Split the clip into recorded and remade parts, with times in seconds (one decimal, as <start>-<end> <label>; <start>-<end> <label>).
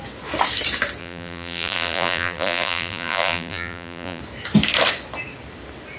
0.0-1.0 recorded; 1.0-4.2 remade; 4.2-6.0 recorded